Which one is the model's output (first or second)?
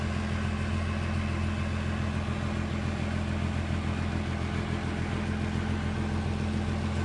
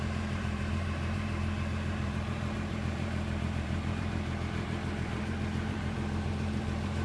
second